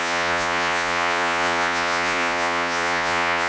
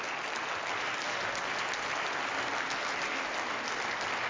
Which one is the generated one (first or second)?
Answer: first